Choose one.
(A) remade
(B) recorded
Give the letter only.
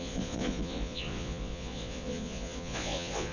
A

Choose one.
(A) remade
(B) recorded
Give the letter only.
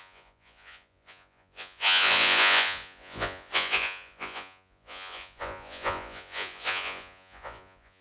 A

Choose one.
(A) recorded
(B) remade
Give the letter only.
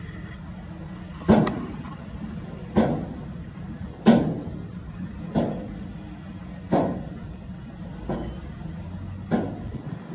A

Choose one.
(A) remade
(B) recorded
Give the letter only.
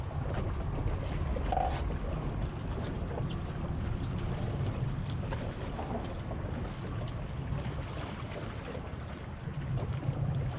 B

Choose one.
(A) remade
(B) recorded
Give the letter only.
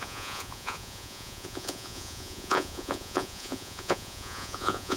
A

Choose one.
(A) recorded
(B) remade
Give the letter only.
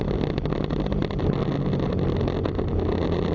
A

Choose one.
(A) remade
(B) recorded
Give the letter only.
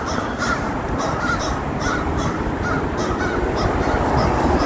B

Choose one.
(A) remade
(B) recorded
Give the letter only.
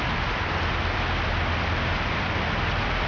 B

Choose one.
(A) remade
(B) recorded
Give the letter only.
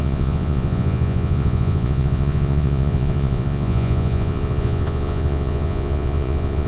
A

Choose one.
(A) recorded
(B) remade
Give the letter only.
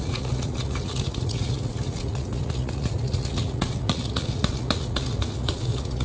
B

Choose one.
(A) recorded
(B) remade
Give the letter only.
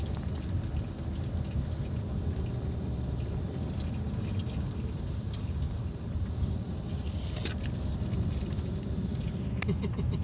A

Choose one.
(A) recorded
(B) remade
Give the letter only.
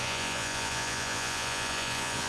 B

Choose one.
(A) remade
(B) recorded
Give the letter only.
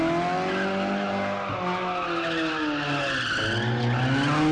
B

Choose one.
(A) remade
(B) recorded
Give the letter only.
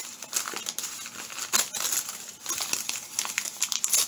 B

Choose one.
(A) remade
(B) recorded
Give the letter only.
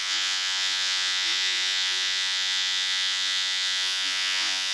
A